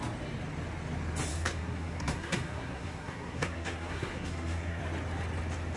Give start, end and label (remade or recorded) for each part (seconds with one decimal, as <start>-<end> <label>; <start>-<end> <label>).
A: 0.0-1.3 recorded; 1.3-4.8 remade; 4.8-5.8 recorded

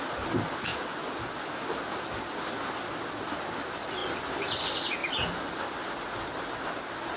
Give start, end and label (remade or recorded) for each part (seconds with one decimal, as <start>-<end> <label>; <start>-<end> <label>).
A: 0.0-7.2 recorded

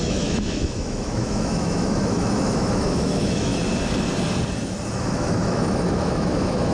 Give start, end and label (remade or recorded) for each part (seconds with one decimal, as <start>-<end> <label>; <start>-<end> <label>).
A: 0.0-3.5 remade; 3.5-4.9 recorded; 4.9-6.7 remade

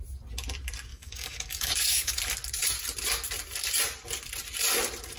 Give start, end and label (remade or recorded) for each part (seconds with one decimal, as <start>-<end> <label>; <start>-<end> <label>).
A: 0.0-0.9 recorded; 0.9-2.2 remade; 2.2-5.2 recorded

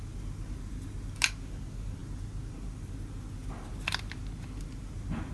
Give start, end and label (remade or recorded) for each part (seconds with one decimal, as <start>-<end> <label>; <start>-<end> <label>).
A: 0.0-5.3 recorded